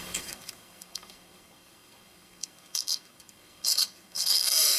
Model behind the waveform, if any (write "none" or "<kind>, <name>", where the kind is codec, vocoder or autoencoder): codec, SNAC